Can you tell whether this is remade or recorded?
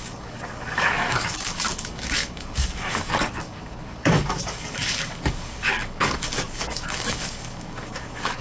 remade